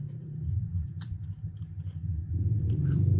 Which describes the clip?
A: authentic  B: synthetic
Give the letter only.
B